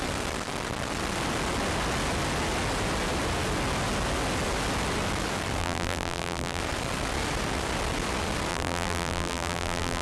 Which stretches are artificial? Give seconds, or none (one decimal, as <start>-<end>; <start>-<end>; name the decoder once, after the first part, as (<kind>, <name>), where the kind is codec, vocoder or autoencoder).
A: 5.6-6.6 (vocoder, BigVGAN v2); 8.5-10.0